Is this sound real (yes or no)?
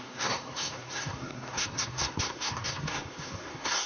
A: no